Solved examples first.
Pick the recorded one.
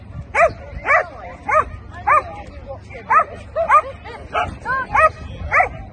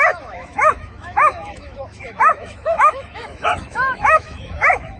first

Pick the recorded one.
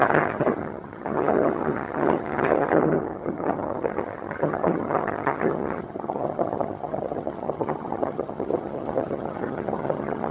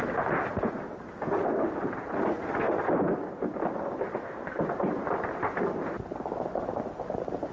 second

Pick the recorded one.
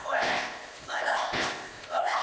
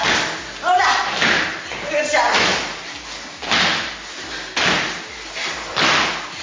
second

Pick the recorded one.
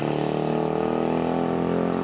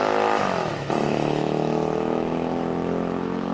first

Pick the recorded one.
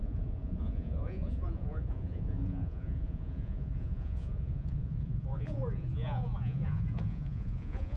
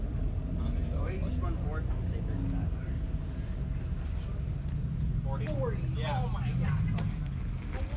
second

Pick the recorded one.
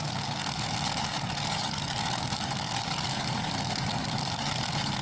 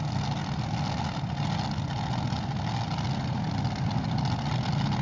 second